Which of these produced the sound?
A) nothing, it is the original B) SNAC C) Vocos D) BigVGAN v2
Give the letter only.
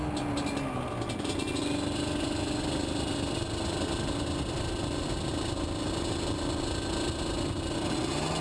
A